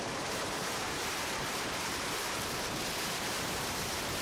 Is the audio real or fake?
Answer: fake